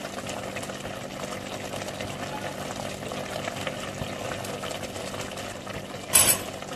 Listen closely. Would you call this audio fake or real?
real